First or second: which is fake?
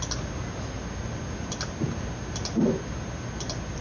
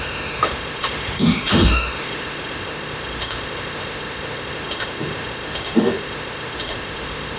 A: second